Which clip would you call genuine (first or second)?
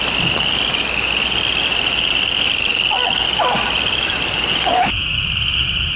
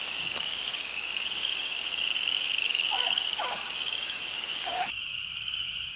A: first